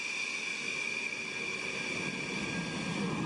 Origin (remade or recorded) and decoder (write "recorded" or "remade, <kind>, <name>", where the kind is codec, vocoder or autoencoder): recorded